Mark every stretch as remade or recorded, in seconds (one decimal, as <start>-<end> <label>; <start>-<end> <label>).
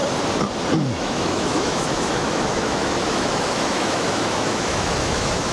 0.0-1.0 recorded; 1.0-5.5 remade